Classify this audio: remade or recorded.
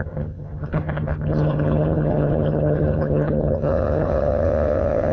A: remade